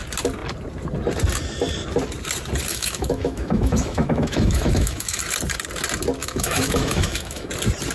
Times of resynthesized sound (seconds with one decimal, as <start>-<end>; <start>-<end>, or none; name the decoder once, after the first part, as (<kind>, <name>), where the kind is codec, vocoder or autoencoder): 2.7-5.2 (autoencoder, DAC-VAE); 6.2-7.5